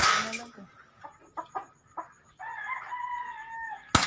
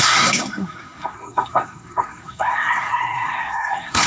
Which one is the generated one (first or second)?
second